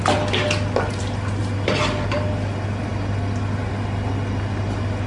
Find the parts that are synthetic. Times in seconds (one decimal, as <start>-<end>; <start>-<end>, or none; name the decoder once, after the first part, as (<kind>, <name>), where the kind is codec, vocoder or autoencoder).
1.4-2.3 (vocoder, BigVGAN v2)